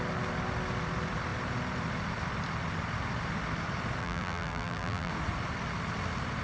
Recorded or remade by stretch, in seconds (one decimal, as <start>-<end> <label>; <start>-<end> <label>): 0.0-4.0 recorded; 4.0-5.1 remade; 5.1-6.4 recorded